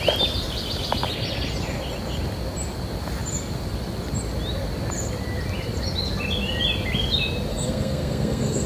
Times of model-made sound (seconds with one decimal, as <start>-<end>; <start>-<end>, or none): 7.5-8.7